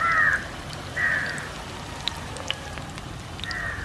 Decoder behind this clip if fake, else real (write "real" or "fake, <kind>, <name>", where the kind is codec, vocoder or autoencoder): real